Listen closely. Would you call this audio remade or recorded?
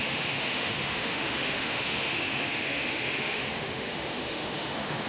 remade